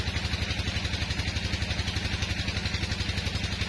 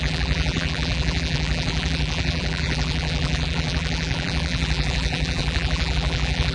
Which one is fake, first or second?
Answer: second